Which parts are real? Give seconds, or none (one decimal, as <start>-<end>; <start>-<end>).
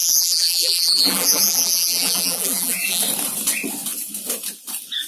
3.0-5.1